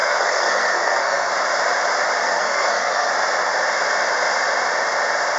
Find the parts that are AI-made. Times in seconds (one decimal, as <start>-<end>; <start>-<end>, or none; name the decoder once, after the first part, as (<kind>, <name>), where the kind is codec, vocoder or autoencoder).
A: 0.0-1.3 (codec, SNAC); 2.2-3.1